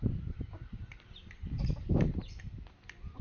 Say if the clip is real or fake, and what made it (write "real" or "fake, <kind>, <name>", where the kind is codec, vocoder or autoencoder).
real